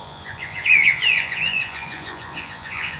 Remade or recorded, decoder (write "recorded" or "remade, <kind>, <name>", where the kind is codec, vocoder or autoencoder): remade, vocoder, Vocos